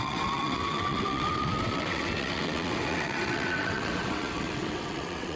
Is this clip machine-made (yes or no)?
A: yes